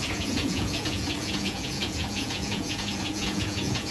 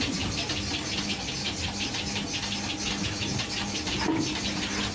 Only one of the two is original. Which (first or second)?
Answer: second